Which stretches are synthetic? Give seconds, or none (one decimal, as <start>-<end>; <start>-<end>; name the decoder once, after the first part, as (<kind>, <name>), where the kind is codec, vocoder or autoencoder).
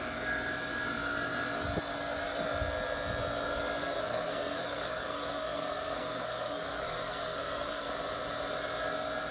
3.8-7.9 (codec, SNAC)